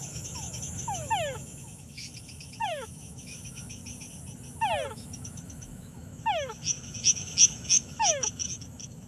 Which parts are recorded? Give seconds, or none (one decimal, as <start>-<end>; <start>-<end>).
3.8-4.9